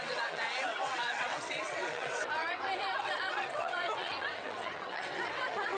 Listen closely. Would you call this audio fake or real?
fake